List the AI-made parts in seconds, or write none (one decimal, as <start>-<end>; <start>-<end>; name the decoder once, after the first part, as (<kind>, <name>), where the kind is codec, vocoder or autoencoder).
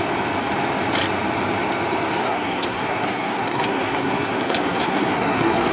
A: 2.2-5.7 (codec, SNAC)